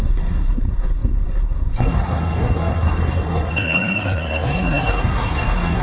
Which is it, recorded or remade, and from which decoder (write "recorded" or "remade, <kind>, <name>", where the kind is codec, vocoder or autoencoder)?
remade, codec, SNAC